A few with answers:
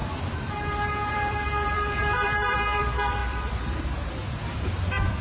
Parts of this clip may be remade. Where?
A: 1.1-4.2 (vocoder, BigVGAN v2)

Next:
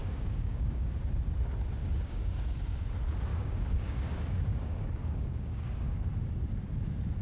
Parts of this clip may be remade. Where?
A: 0.0-1.0 (codec, DAC); 1.8-2.6; 3.3-6.0

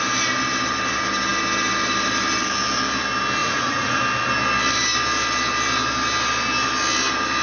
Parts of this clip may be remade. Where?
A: 3.4-4.0 (vocoder, Vocos)

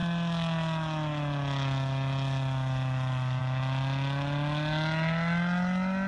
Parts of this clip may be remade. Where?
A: none

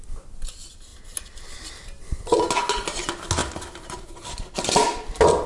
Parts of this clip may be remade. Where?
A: 3.4-5.1 (vocoder, BigVGAN v2)

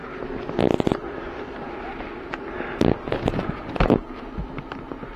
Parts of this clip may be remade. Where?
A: none